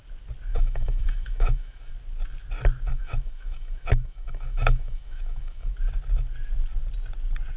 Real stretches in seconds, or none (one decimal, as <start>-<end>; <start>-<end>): 0.0-0.5; 1.9-2.9; 5.7-7.6